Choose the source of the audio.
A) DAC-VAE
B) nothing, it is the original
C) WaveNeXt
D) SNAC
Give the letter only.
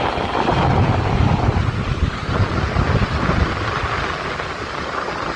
B